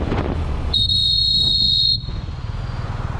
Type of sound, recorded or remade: remade